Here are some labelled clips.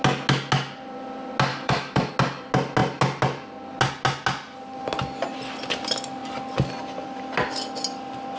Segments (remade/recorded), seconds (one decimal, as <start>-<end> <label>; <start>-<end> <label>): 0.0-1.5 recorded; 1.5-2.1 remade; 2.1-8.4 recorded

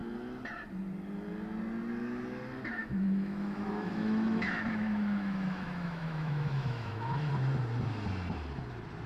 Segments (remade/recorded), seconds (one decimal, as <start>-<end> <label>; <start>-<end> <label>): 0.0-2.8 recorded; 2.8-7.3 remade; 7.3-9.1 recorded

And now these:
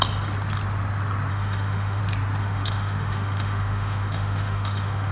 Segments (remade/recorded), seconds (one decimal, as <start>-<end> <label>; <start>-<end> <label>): 0.0-1.3 recorded; 1.3-2.0 remade; 2.0-2.4 recorded; 2.4-5.1 remade